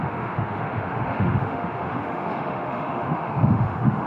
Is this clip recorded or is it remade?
remade